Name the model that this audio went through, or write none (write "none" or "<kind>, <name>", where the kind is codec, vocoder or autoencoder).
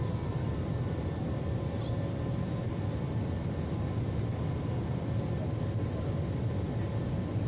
none